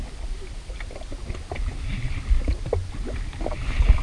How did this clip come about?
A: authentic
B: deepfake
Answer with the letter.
A